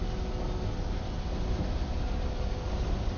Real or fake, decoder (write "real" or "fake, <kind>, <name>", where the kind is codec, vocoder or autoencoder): real